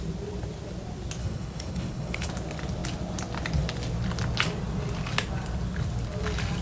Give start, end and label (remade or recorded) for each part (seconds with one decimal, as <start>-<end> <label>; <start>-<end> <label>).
0.0-1.2 recorded; 1.2-2.3 remade; 2.3-6.6 recorded